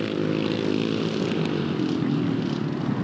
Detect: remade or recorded recorded